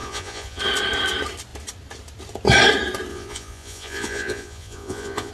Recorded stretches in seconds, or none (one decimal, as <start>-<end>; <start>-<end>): 0.6-3.1